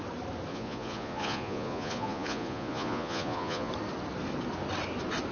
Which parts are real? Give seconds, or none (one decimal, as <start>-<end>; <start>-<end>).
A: 0.0-0.5; 3.7-5.3